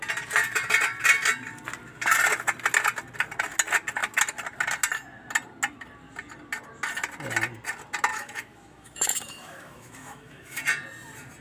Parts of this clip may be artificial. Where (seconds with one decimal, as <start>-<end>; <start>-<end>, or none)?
8.1-10.6